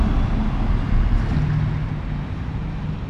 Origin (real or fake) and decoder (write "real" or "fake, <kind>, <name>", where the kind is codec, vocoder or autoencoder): real